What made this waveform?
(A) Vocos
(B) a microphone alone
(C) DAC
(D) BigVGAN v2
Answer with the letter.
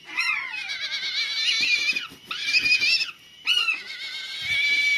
B